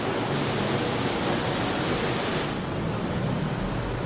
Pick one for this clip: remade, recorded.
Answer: recorded